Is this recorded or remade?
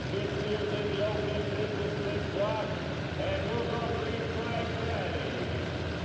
recorded